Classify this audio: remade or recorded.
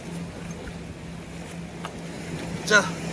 recorded